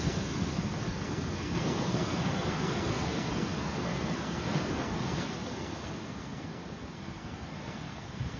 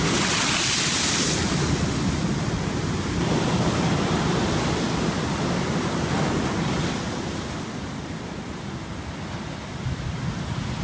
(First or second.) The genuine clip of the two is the second